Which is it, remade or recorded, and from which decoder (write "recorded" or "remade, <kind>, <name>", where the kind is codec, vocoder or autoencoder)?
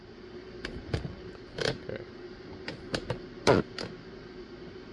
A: recorded